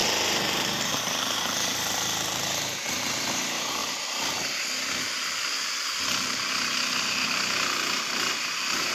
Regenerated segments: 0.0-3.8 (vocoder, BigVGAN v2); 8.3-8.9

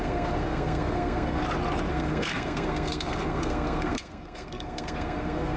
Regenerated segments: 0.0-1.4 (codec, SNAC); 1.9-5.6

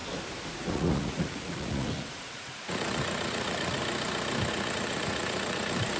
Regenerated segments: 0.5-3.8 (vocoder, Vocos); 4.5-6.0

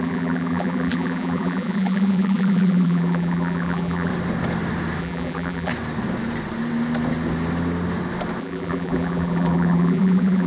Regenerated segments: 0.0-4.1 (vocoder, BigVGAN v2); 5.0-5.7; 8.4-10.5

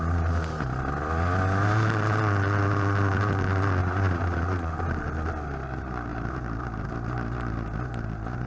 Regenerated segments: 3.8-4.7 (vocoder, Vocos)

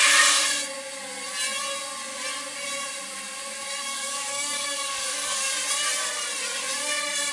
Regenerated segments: 3.9-5.5 (codec, DAC)

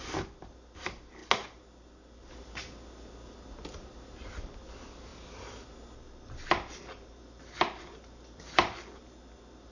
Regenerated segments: none

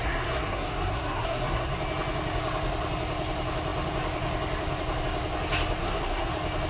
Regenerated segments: 0.0-1.8 (codec, SNAC); 5.8-6.3